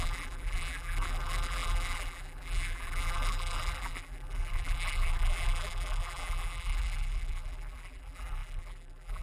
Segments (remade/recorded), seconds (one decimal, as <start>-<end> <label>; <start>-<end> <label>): 0.0-9.2 remade